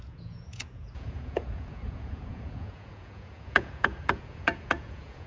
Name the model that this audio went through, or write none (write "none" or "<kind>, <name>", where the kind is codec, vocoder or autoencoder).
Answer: vocoder, Vocos